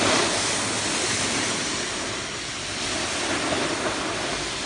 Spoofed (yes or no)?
no